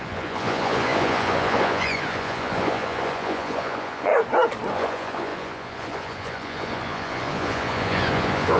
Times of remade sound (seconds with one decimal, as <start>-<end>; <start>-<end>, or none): 0.0-4.1; 4.7-8.6